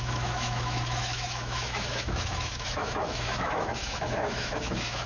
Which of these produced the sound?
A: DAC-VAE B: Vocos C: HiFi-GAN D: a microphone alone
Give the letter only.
A